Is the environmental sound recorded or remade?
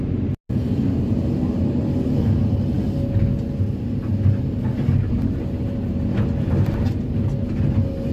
recorded